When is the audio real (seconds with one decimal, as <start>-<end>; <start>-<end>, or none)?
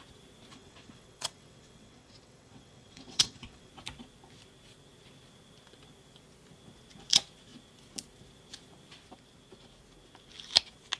0.0-0.5; 3.7-11.0